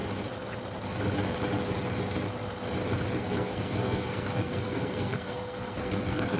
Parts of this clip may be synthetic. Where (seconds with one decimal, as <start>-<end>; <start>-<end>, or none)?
3.1-6.4